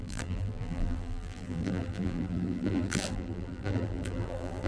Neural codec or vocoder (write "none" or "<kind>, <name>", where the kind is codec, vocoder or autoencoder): vocoder, BigVGAN v2